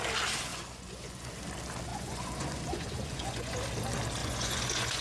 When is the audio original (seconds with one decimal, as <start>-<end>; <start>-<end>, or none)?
0.0-0.5; 1.3-1.9; 3.6-4.2